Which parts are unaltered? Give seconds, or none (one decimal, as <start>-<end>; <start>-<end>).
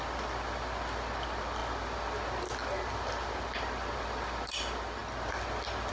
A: 0.0-5.9